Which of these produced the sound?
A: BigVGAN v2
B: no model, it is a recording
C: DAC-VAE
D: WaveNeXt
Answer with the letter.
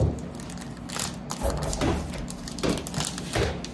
B